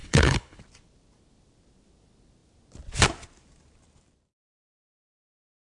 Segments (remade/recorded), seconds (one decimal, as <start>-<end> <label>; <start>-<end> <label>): 0.0-0.6 remade; 0.6-5.7 recorded